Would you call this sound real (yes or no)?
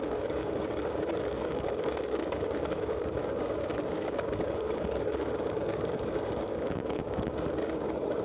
no